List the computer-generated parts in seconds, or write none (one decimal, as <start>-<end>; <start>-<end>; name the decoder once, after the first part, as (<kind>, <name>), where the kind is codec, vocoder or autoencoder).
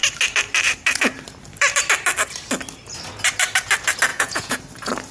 4.1-4.6 (vocoder, Vocos)